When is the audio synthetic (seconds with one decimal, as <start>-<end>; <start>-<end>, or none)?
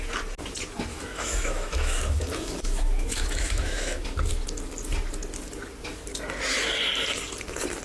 0.9-4.3